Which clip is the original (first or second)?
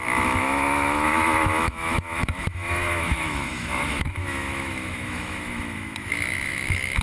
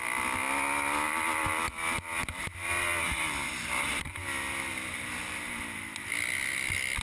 second